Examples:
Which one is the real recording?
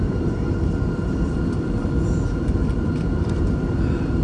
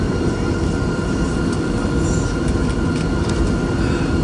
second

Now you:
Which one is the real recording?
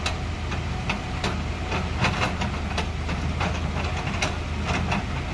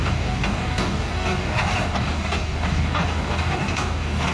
first